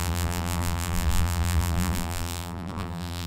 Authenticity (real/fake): fake